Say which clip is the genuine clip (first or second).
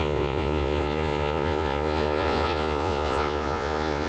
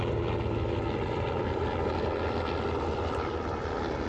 second